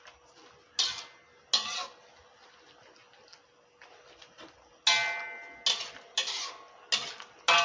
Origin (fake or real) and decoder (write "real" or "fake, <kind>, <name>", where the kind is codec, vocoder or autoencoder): real